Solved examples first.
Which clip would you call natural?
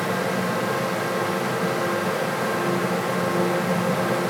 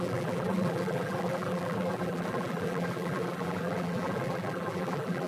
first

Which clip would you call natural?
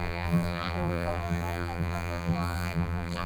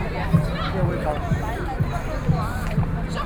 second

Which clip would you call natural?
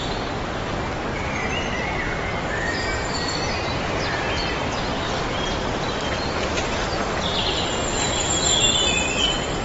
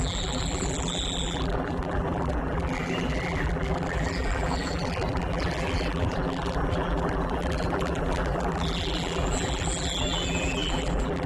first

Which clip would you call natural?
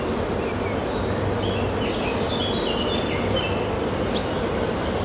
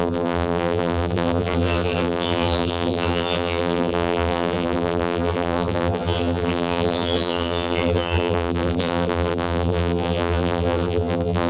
first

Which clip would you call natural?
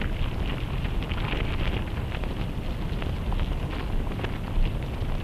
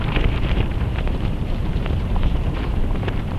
first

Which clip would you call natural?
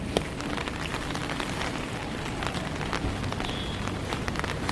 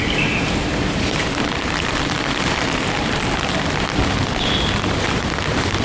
first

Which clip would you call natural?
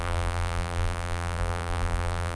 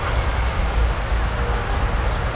second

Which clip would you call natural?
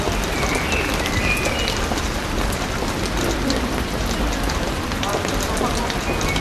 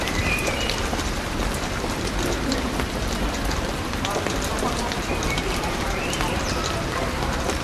first